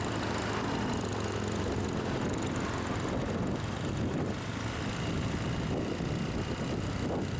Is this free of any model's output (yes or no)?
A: yes